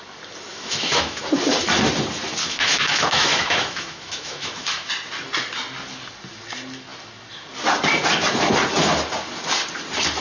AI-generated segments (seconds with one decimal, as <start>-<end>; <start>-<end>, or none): 0.5-1.2; 2.4-4.9